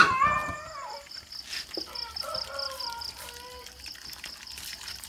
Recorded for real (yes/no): yes